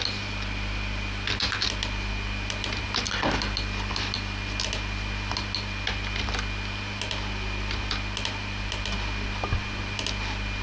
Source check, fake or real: real